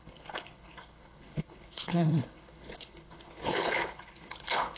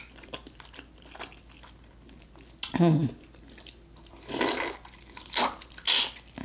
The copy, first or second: first